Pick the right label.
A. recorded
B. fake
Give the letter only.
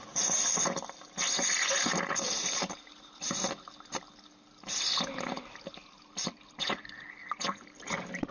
A